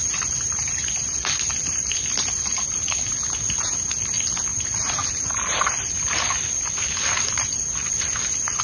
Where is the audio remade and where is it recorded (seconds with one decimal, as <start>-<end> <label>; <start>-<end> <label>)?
0.0-4.5 recorded; 4.5-5.1 remade; 5.1-8.6 recorded